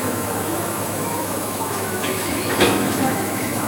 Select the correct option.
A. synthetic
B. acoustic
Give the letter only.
A